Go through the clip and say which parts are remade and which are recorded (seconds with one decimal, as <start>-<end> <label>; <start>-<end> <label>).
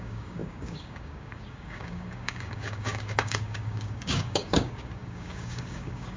0.0-6.2 remade